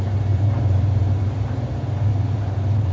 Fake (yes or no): yes